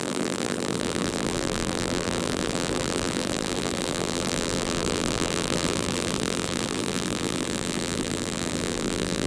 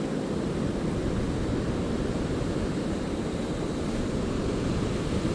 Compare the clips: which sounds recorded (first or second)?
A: second